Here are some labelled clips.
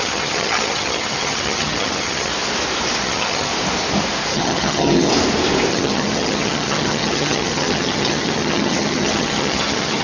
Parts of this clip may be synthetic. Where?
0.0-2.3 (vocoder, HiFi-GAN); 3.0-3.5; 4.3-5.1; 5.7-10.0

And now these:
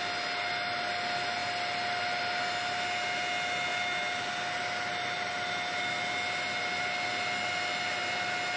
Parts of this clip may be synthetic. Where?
none

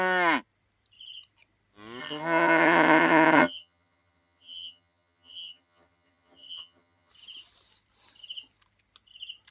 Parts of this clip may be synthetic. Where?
2.0-7.1 (vocoder, HiFi-GAN)

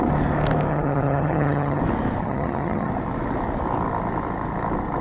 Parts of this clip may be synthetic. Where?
0.7-1.8 (vocoder, HiFi-GAN); 2.2-2.9

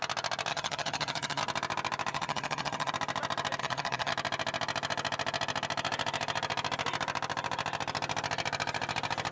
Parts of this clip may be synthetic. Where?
0.5-1.4 (vocoder, HiFi-GAN); 2.1-2.9; 3.6-4.1

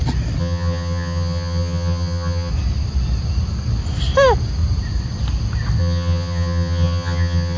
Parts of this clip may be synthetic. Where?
0.4-2.5 (vocoder, HiFi-GAN); 5.8-7.6

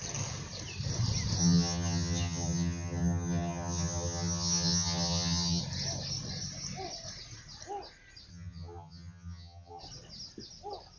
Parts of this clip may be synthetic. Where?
1.4-5.6 (vocoder, HiFi-GAN); 8.3-9.8

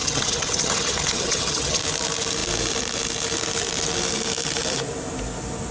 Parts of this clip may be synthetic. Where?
0.0-1.8 (vocoder, HiFi-GAN)